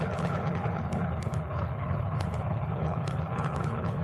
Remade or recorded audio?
remade